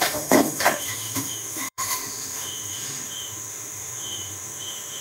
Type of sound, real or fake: fake